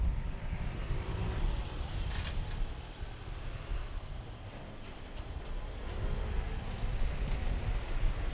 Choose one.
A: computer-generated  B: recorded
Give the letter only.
B